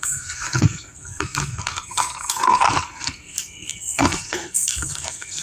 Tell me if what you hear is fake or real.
fake